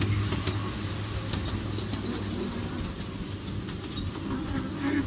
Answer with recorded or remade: recorded